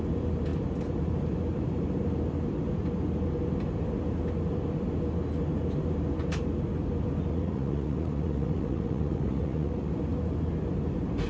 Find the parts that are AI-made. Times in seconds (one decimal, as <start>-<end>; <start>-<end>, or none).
7.3-9.9

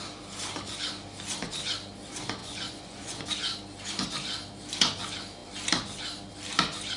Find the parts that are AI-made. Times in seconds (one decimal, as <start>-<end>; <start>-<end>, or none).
2.4-3.2